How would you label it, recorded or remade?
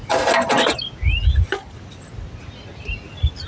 recorded